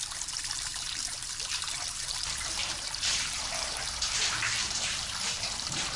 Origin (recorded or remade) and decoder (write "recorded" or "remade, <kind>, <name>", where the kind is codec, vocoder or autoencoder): remade, vocoder, BigVGAN v2